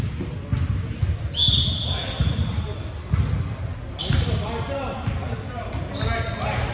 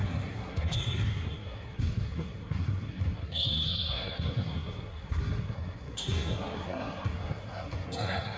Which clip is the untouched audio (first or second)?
first